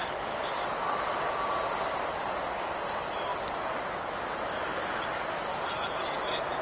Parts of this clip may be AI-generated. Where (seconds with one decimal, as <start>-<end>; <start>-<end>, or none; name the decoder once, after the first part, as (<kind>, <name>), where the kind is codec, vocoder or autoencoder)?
0.0-2.5 (vocoder, BigVGAN v2); 5.5-6.6

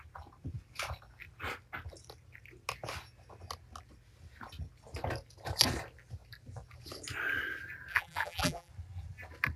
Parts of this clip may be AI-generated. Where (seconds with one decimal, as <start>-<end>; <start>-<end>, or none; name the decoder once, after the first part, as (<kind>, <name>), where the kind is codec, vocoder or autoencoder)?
7.9-8.7 (vocoder, BigVGAN v2)

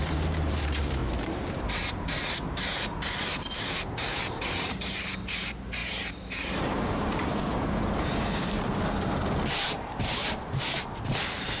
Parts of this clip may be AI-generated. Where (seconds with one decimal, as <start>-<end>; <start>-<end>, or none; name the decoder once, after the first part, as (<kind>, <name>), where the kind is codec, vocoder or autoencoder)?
0.0-11.6 (vocoder, BigVGAN v2)

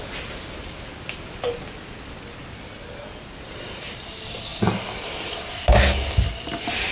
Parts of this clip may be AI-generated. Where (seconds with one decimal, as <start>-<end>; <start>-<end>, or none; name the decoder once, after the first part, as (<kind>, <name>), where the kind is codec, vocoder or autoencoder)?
none

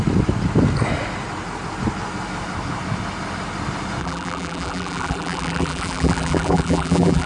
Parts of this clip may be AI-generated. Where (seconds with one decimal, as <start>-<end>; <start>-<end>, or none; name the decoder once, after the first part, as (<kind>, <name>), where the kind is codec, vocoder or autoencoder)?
4.0-7.3 (vocoder, BigVGAN v2)

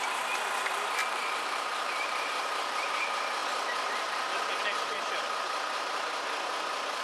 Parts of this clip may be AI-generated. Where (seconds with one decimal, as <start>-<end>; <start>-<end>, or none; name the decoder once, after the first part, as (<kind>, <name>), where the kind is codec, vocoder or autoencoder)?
1.0-2.9 (vocoder, BigVGAN v2)

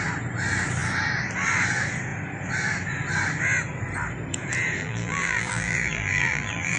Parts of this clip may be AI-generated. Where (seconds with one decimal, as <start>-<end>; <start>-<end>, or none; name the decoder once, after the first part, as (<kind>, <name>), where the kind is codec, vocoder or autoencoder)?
4.8-6.8 (vocoder, BigVGAN v2)

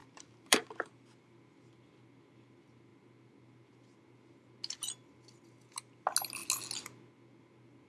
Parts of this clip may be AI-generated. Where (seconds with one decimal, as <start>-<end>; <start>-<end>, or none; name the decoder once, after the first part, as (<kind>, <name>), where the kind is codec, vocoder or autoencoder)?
0.0-0.9 (vocoder, BigVGAN v2)